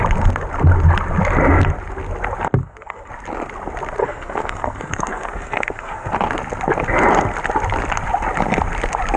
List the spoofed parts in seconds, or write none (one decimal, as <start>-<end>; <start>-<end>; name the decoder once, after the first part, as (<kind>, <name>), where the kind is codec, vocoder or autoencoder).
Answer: 2.6-3.1 (codec, SNAC); 4.0-6.1